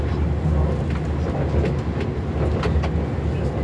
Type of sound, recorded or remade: recorded